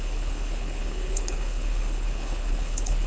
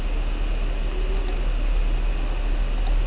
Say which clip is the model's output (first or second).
first